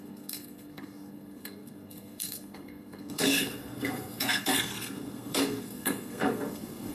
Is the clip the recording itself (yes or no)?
no